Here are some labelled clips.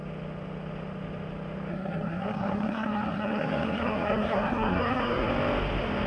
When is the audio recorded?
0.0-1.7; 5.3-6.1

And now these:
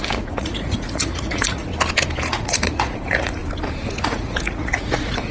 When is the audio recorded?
1.7-2.2; 3.4-4.0

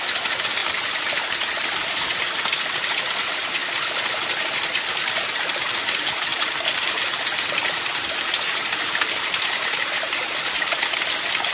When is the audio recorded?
0.0-0.6; 2.4-6.3; 10.8-11.5

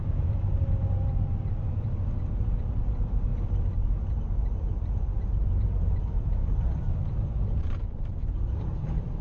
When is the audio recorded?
3.3-4.1